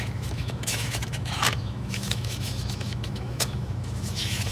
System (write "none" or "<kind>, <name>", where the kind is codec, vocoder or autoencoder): autoencoder, DAC-VAE